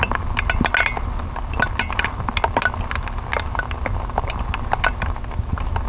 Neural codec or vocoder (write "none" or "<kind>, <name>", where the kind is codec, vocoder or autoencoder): none